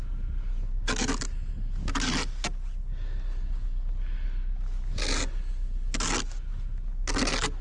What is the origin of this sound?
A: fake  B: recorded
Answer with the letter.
B